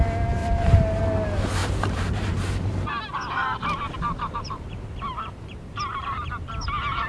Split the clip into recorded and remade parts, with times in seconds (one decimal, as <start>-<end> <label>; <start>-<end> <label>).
0.0-0.4 recorded; 0.4-1.0 remade; 1.0-1.6 recorded; 1.6-2.7 remade; 2.7-3.4 recorded; 3.4-6.3 remade; 6.3-7.1 recorded